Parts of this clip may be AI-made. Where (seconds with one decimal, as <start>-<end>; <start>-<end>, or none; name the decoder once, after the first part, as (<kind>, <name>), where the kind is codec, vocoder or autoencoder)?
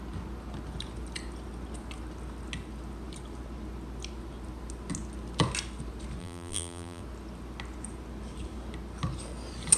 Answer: 6.2-7.0 (vocoder, BigVGAN v2)